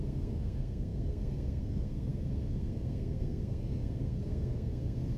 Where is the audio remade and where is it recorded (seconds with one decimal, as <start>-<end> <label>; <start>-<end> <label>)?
0.0-5.2 remade